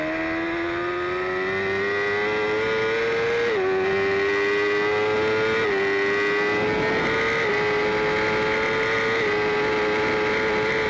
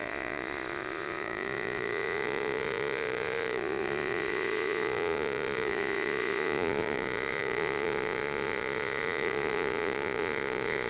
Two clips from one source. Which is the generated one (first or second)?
second